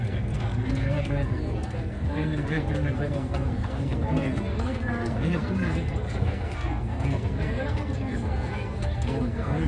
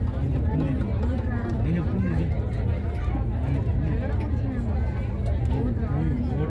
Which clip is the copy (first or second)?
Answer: first